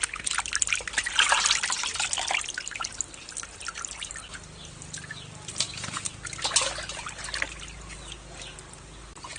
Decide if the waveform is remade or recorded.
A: recorded